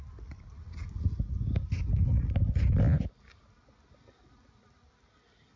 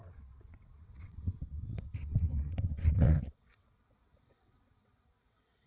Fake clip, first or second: second